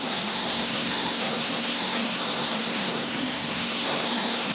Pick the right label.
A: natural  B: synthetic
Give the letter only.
B